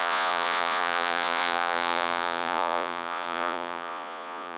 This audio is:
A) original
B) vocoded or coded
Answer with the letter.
B